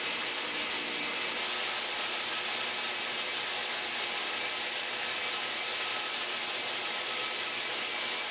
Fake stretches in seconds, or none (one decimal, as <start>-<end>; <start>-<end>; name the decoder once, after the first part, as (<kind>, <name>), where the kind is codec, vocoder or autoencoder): none